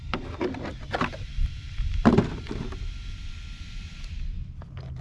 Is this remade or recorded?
recorded